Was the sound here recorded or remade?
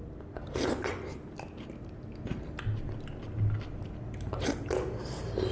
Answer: recorded